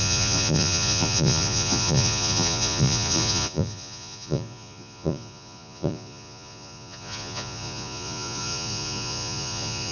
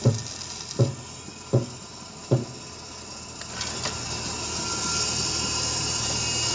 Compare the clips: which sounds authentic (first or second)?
second